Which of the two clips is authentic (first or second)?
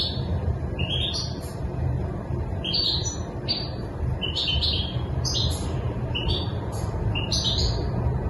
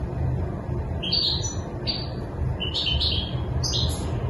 second